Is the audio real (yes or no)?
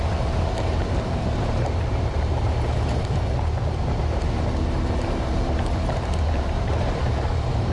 no